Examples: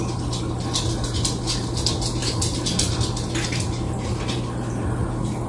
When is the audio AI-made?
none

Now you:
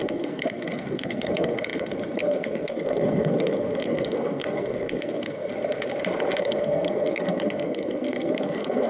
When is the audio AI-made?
0.0-5.5; 6.4-8.9

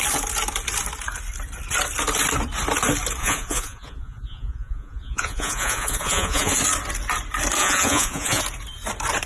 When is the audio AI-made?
3.2-6.5; 7.6-8.4

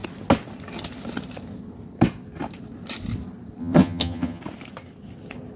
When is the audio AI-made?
3.6-4.4

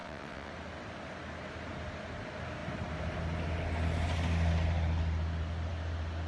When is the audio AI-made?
0.0-0.5

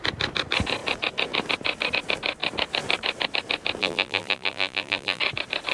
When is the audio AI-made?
3.8-5.2

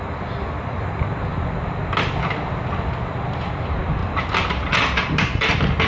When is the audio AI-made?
4.0-5.9